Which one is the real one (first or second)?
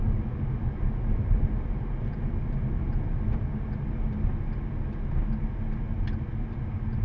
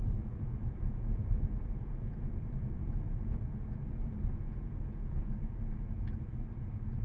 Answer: first